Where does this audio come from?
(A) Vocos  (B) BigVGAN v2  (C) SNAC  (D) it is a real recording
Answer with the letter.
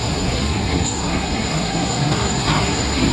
C